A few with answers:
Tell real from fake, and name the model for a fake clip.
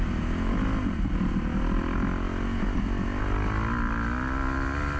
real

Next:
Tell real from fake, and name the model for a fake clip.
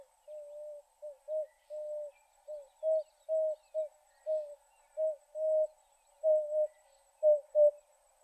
real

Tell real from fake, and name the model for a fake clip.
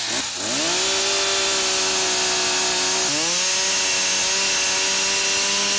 real